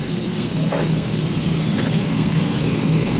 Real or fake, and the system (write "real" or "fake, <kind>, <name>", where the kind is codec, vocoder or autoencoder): fake, codec, SNAC